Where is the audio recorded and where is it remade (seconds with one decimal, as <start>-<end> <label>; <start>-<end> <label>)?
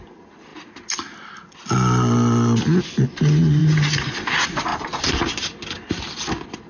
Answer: 0.0-3.6 recorded; 3.6-4.1 remade; 4.1-4.7 recorded; 4.7-5.4 remade; 5.4-6.7 recorded